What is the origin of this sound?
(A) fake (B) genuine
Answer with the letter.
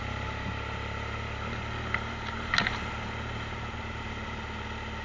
B